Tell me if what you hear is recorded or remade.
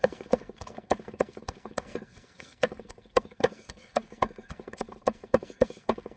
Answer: remade